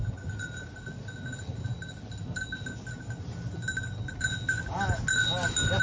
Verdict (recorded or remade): recorded